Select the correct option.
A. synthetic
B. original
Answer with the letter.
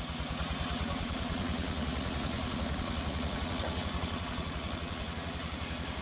A